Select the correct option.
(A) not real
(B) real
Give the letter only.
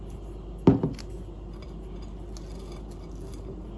B